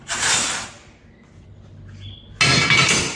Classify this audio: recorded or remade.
recorded